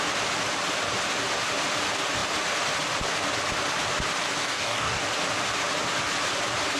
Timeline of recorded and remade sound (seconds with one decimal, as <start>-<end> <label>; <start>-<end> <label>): 0.0-4.4 recorded; 4.4-5.0 remade; 5.0-6.8 recorded